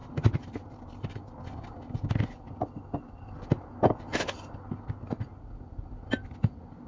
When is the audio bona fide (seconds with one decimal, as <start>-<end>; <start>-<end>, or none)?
0.0-6.9